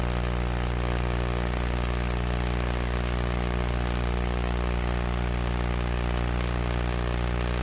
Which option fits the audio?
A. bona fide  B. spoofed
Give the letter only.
A